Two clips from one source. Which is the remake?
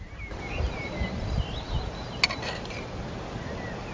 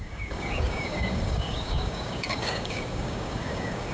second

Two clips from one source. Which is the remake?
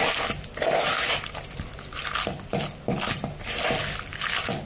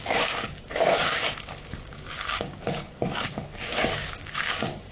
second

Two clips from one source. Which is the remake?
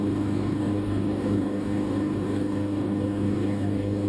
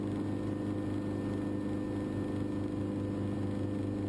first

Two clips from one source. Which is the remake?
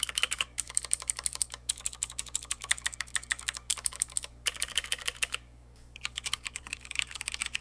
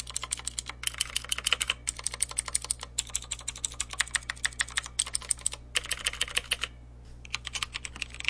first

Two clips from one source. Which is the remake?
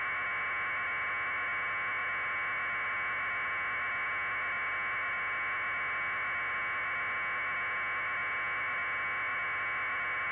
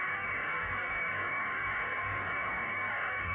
second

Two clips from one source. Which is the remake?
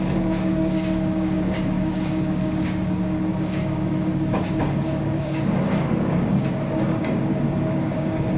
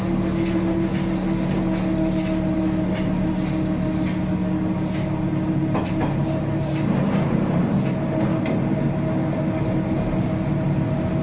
first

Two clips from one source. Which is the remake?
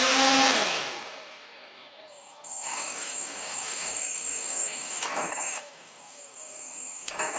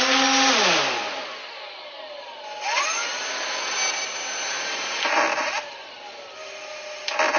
first